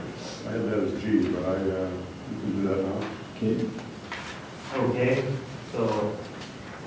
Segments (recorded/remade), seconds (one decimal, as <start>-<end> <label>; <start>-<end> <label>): 0.0-6.9 recorded